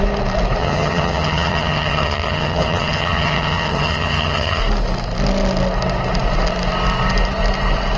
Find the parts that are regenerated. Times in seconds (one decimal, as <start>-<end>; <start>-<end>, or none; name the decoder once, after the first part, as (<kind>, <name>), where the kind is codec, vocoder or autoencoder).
0.6-4.6 (vocoder, HiFi-GAN)